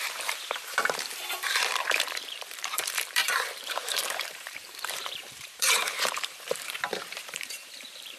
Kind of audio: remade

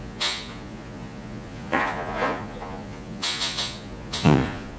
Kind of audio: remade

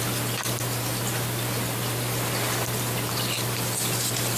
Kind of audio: recorded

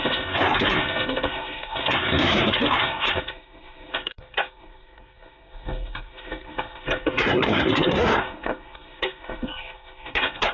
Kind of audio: remade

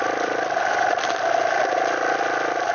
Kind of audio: recorded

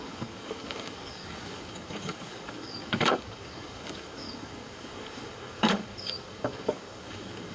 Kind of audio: remade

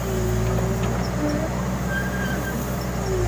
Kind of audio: recorded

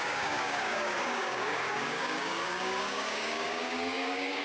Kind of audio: remade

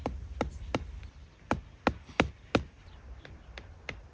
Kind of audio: recorded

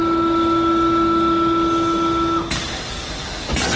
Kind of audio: recorded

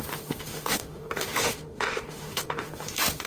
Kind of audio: remade